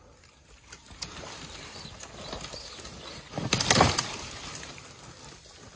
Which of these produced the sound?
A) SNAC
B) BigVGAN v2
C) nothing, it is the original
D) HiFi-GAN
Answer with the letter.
C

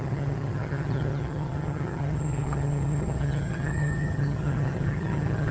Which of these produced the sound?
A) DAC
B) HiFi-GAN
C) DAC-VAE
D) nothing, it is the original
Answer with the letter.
B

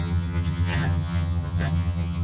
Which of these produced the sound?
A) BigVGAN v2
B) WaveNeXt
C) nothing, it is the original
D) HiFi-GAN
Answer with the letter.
D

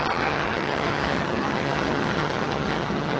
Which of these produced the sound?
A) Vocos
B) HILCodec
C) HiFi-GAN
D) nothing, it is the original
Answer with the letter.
C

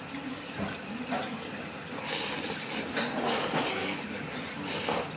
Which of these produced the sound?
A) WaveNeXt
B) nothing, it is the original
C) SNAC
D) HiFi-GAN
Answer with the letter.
B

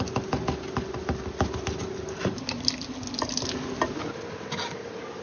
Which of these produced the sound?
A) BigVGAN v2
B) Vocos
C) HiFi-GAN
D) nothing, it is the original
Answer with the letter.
D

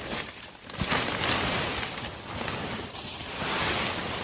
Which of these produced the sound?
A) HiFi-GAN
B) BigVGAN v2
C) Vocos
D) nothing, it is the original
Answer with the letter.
D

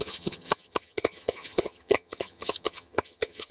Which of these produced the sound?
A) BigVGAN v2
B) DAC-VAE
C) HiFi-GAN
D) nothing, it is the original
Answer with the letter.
C